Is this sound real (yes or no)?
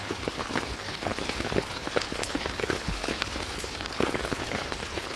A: no